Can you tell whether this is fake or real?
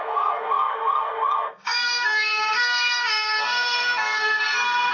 fake